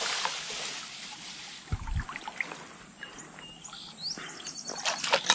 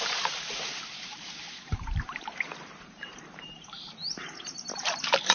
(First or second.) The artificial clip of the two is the second